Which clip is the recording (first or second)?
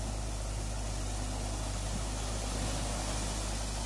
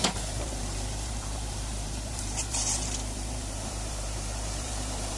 first